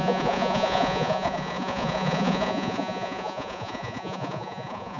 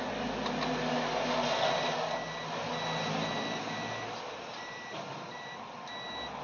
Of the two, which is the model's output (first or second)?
first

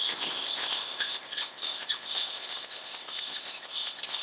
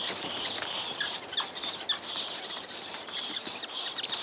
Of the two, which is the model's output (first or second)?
first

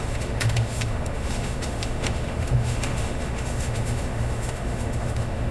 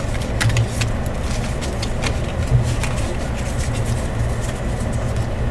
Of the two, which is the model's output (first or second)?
first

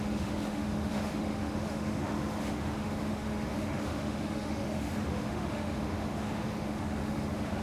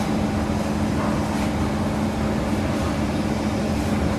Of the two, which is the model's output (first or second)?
first